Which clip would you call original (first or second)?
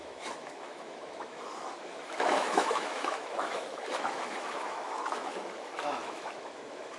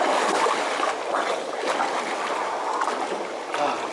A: second